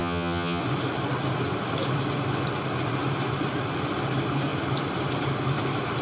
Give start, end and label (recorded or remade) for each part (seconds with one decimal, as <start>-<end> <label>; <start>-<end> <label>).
0.0-0.6 remade; 0.6-6.0 recorded

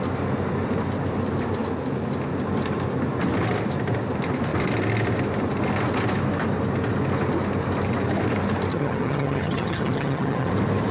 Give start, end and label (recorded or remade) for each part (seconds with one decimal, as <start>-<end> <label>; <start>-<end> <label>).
0.0-8.7 recorded; 8.7-10.5 remade; 10.5-10.9 recorded

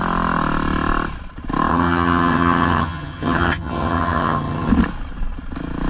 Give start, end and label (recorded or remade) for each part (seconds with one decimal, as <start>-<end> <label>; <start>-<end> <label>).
0.0-1.7 recorded; 1.7-4.7 remade; 4.7-5.9 recorded

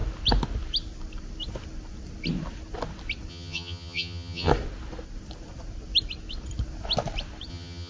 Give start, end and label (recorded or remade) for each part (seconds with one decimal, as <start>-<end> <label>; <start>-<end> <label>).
0.0-3.3 recorded; 3.3-4.5 remade; 4.5-7.5 recorded; 7.5-7.9 remade

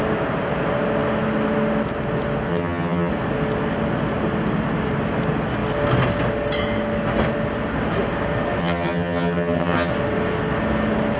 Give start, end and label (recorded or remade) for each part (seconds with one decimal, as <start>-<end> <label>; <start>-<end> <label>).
0.0-2.5 recorded; 2.5-3.1 remade; 3.1-8.6 recorded; 8.6-9.9 remade; 9.9-11.2 recorded

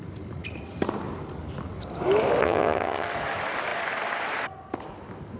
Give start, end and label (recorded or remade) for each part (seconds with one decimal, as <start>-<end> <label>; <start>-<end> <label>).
0.0-2.4 recorded; 2.4-3.1 remade; 3.1-5.4 recorded

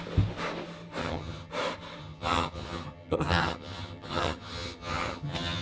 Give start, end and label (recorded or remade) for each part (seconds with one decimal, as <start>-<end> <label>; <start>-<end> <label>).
0.0-1.0 recorded; 1.0-1.5 remade; 1.5-2.0 recorded; 2.0-5.6 remade